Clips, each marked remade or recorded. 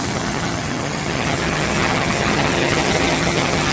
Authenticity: remade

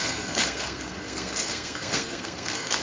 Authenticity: remade